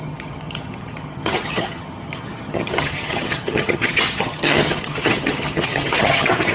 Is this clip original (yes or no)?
no